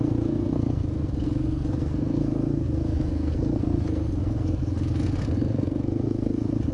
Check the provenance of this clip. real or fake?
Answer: fake